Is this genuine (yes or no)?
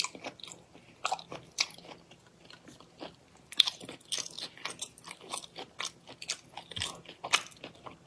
yes